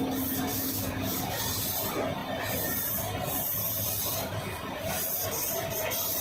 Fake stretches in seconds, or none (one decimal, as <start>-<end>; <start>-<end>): 0.5-1.4